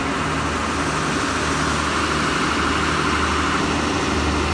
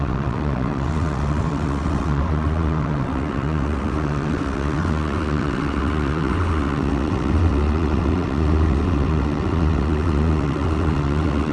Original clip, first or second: first